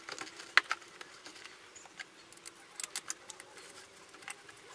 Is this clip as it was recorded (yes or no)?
yes